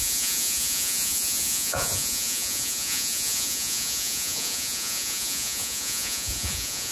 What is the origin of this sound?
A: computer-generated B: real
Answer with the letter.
A